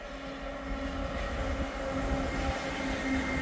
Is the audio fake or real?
real